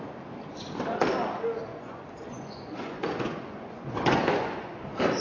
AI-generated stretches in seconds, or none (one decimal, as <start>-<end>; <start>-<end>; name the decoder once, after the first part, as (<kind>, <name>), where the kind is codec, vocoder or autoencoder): 1.7-4.8 (vocoder, Vocos)